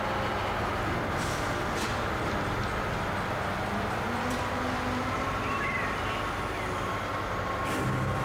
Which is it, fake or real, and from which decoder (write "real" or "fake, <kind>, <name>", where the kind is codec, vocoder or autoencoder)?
real